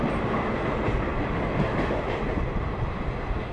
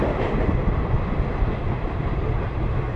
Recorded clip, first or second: first